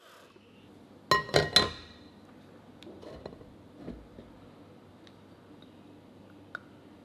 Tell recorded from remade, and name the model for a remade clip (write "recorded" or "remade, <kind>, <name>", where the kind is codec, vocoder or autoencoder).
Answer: recorded